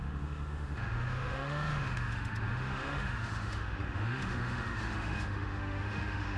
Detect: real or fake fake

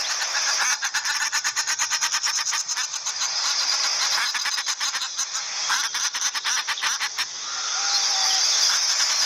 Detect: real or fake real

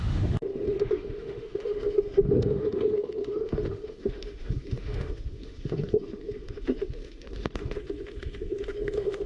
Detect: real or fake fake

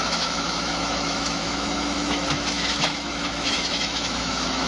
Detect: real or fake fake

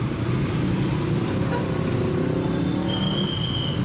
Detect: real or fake real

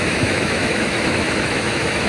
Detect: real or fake fake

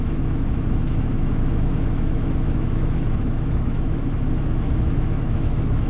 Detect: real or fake fake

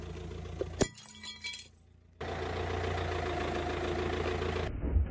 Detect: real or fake real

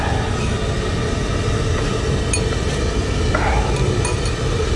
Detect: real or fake real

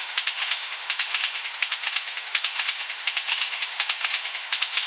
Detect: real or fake fake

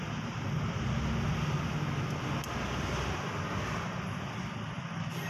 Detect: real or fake real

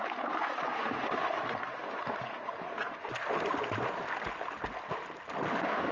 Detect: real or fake real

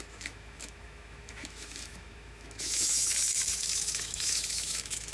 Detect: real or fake fake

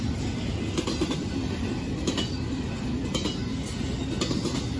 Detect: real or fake real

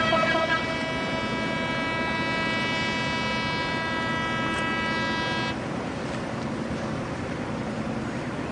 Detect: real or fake real